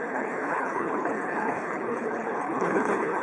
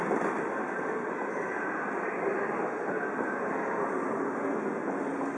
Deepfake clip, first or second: first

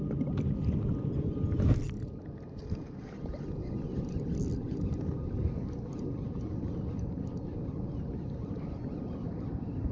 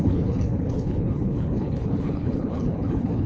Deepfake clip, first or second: second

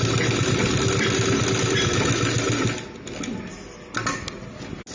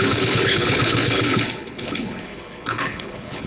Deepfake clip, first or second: second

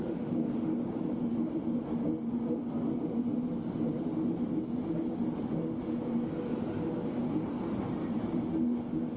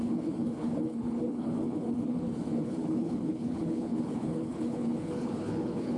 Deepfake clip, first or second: second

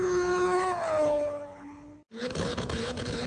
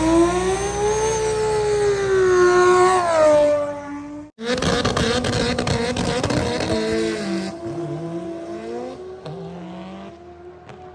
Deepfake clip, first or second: first